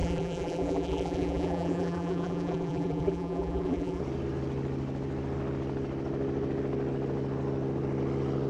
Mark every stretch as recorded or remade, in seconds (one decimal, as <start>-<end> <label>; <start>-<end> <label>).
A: 0.0-4.0 remade; 4.0-8.5 recorded

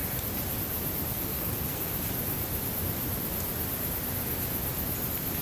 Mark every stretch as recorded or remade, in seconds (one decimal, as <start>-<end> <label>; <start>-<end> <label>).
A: 0.0-1.1 recorded; 1.1-1.9 remade; 1.9-5.4 recorded

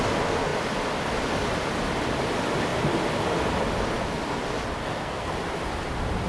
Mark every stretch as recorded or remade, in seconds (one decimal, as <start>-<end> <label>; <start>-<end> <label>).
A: 0.0-4.8 recorded; 4.8-5.3 remade; 5.3-6.3 recorded